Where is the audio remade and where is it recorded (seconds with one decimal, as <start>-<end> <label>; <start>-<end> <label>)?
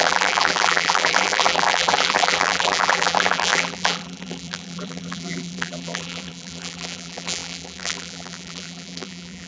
0.0-9.5 remade